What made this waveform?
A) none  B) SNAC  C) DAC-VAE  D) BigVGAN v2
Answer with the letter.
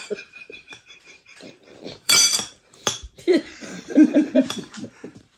D